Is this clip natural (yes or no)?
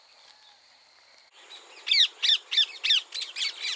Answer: yes